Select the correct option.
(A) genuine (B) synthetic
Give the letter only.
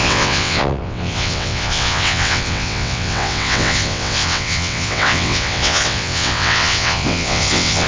B